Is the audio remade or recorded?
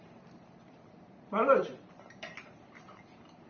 remade